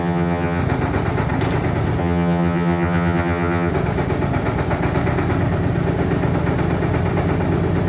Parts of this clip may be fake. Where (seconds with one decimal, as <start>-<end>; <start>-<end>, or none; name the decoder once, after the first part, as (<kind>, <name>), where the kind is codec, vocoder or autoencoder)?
0.0-0.6 (vocoder, HiFi-GAN); 2.0-3.7